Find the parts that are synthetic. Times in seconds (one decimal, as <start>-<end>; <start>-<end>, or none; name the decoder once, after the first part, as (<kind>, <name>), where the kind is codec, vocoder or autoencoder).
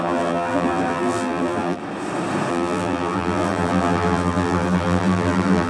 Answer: 0.0-1.8 (vocoder, BigVGAN v2); 2.5-5.7